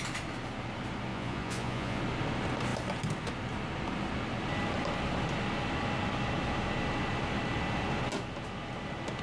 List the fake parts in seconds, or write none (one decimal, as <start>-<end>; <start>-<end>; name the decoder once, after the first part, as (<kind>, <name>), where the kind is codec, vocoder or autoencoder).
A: 1.1-2.0 (vocoder, Vocos)